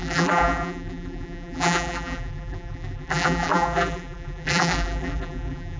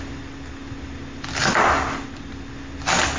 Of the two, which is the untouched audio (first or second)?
second